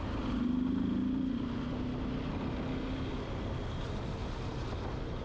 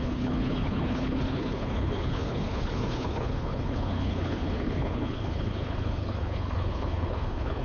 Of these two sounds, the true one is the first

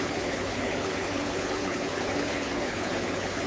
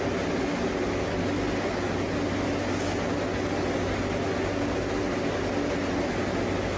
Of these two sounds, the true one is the second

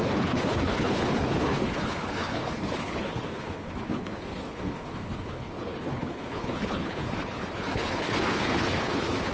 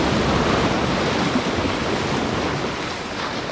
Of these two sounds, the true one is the second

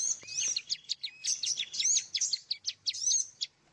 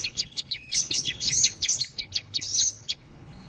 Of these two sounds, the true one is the first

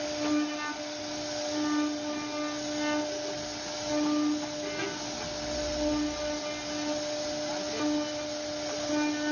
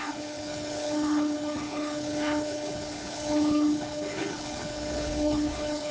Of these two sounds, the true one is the first